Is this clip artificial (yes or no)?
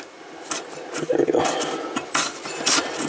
no